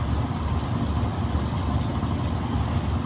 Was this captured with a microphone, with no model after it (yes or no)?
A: yes